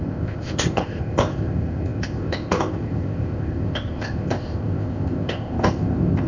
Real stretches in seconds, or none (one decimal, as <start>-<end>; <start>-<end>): none